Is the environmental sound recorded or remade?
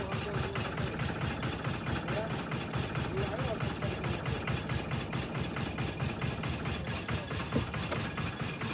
recorded